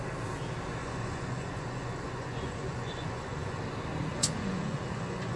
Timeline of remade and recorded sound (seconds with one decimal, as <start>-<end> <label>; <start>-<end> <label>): 0.0-0.8 recorded; 0.8-3.6 remade; 3.6-4.1 recorded; 4.1-5.4 remade